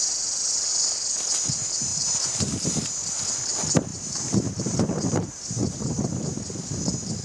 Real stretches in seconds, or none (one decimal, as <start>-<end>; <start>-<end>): 0.0-1.9; 2.4-3.9; 6.0-7.2